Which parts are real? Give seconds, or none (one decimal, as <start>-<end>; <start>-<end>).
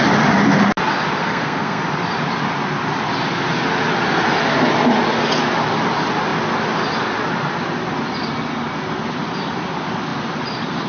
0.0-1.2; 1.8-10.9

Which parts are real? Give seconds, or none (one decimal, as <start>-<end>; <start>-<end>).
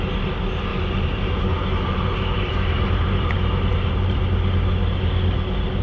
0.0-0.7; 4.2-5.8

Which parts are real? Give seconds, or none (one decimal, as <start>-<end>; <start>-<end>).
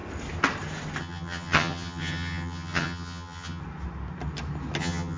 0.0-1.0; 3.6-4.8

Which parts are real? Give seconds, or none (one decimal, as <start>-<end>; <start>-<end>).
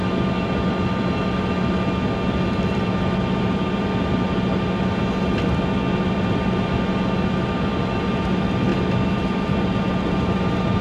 0.0-10.8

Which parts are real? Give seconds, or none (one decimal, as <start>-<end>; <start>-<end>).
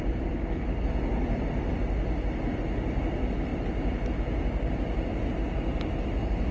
0.0-6.5